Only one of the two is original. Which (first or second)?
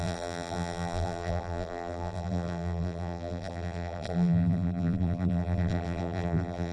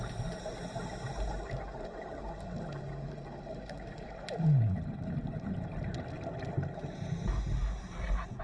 second